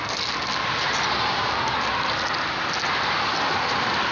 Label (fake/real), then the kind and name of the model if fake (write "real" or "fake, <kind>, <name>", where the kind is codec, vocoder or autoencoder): real